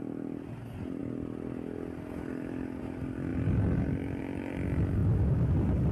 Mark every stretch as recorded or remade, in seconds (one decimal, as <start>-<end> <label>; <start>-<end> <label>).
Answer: 0.0-5.9 recorded